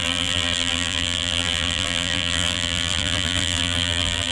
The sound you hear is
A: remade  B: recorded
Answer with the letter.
A